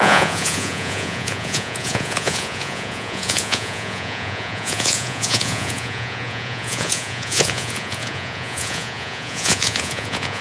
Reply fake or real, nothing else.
fake